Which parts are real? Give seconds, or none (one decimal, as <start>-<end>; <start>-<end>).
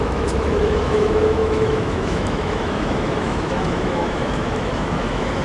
none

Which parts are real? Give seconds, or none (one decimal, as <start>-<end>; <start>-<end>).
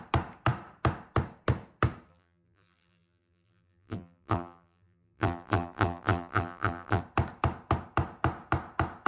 0.0-2.1; 7.0-9.1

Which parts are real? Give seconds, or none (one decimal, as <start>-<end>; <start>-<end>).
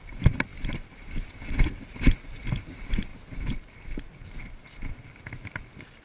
3.1-5.1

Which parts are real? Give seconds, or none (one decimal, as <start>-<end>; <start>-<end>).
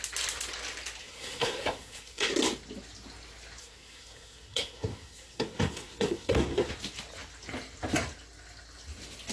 0.0-1.0; 2.3-3.6; 6.7-9.3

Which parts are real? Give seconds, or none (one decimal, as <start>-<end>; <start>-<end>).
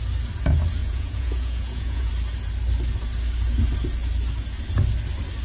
0.0-0.8; 2.1-5.4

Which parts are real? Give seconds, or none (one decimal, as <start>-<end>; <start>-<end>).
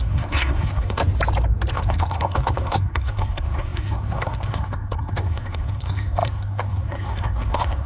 1.0-1.7